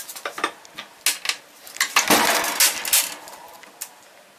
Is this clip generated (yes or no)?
no